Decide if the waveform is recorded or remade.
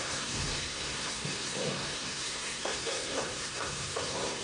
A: remade